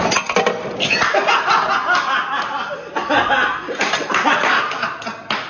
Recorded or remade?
recorded